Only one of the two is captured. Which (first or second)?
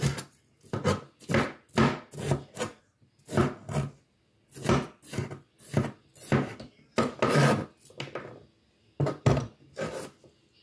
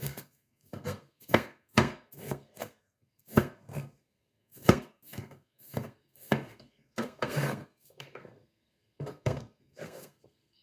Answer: first